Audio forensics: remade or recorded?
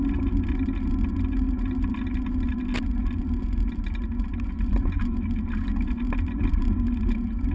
recorded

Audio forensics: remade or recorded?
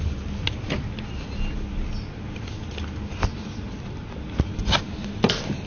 recorded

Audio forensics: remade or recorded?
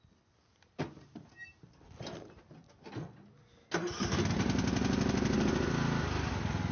recorded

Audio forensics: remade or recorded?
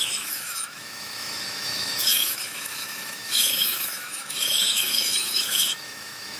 remade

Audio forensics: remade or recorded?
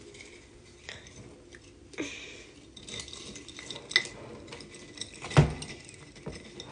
recorded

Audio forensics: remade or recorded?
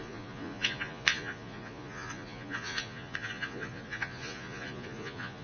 remade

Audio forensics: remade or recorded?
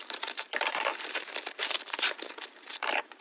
remade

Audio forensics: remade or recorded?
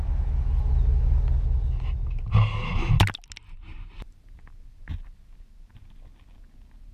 recorded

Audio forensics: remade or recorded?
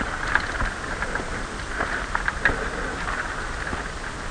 recorded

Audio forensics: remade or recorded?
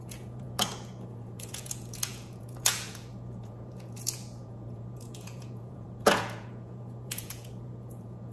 remade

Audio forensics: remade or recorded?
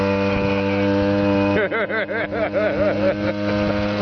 recorded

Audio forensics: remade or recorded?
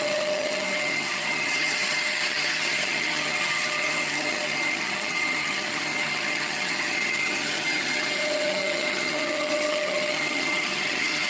remade